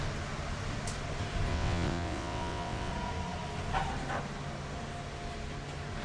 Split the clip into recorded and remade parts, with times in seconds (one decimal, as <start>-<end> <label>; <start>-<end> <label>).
0.0-1.5 recorded; 1.5-2.9 remade; 2.9-6.0 recorded